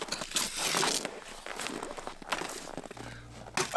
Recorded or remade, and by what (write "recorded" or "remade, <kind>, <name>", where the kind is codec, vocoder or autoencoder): recorded